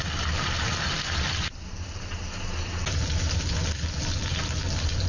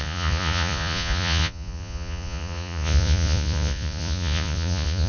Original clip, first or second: first